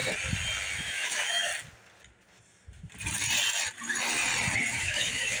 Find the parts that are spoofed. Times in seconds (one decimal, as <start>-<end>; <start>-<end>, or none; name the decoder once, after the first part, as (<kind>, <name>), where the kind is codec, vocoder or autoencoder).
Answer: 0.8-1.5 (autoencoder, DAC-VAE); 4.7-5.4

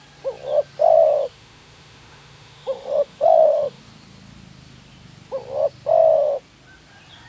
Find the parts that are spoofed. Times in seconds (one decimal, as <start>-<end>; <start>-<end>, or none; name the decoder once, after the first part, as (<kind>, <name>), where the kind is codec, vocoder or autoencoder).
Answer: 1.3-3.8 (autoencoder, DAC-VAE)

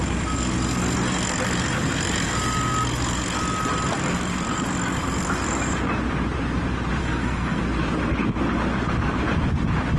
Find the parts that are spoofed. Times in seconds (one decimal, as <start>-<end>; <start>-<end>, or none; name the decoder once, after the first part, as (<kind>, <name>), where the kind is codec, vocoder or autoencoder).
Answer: 7.0-7.6 (codec, SNAC)

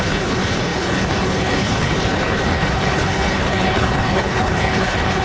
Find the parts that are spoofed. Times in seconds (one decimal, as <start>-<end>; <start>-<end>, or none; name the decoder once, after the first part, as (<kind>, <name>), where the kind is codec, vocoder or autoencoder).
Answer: 0.0-5.2 (codec, HILCodec)

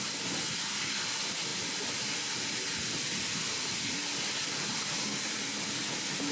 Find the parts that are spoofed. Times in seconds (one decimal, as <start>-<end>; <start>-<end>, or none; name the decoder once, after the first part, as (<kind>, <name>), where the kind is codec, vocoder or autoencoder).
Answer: none